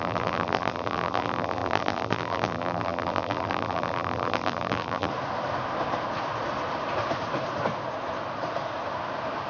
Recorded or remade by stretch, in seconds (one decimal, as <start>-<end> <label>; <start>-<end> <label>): 0.0-5.1 remade; 5.1-9.5 recorded